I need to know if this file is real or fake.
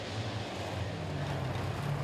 real